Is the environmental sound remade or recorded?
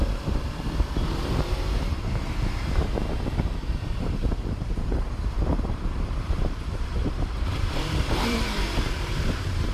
remade